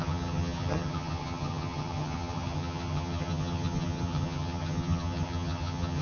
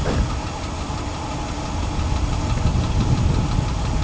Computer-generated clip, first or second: first